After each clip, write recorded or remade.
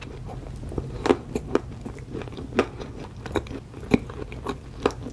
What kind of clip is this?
recorded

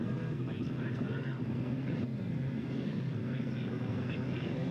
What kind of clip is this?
remade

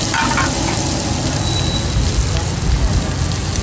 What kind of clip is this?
recorded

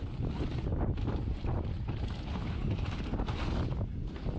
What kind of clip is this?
recorded